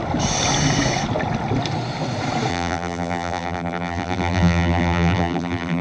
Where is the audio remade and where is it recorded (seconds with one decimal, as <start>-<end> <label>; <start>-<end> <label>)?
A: 0.0-2.5 recorded; 2.5-5.8 remade